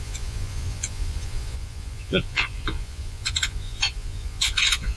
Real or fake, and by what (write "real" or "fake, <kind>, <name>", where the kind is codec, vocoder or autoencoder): fake, vocoder, Vocos